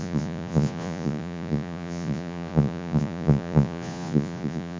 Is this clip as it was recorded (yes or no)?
no